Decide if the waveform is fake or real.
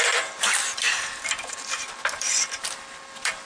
real